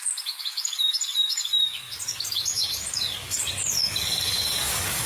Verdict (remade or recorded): remade